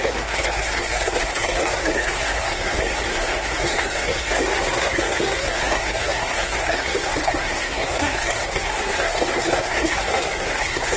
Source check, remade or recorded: remade